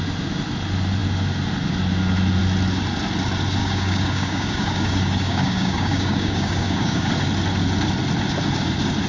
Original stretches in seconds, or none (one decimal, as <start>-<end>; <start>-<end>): 0.0-3.6; 7.1-9.1